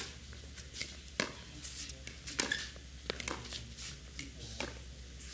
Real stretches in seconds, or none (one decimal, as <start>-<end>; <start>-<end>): 0.0-5.3